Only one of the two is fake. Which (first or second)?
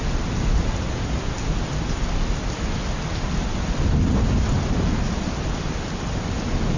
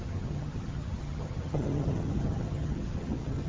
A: second